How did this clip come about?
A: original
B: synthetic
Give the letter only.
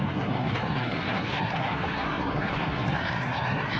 B